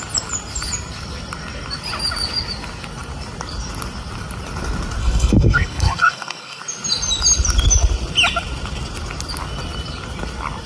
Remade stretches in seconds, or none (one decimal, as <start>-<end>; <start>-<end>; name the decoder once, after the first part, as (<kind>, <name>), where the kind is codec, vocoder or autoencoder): 5.0-6.6 (codec, SNAC)